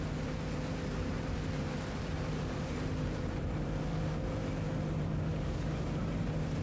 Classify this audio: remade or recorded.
remade